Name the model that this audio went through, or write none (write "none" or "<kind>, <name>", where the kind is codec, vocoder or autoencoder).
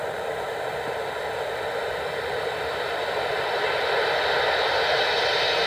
vocoder, BigVGAN v2